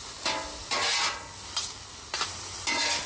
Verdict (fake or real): real